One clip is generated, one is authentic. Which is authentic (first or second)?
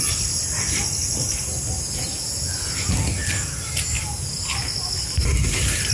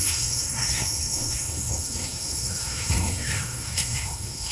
first